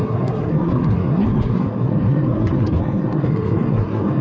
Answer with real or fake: fake